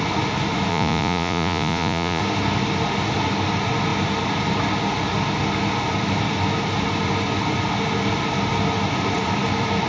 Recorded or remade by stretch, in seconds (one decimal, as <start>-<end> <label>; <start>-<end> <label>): 0.0-0.7 recorded; 0.7-2.2 remade; 2.2-9.9 recorded